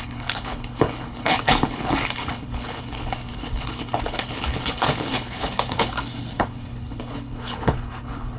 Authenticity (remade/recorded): remade